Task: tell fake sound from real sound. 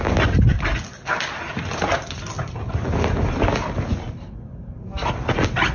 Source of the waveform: real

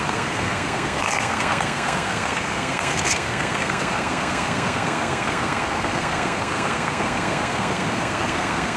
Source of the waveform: fake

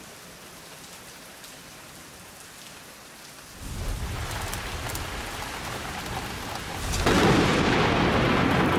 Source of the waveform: real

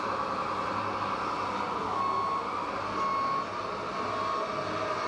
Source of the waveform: real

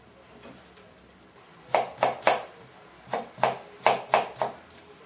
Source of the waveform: real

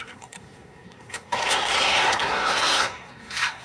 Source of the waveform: fake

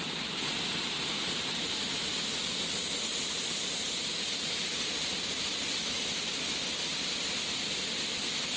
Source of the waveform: real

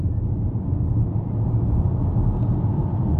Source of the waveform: real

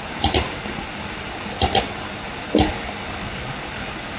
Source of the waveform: real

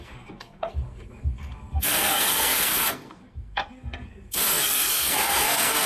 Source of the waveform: fake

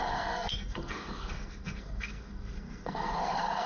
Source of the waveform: fake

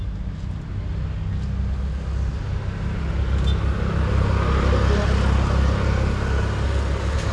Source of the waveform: real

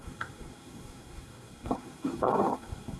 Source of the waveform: fake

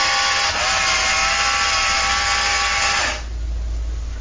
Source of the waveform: real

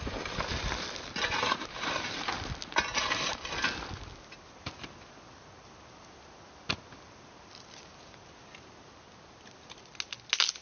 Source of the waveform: real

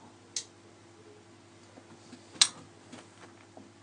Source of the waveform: real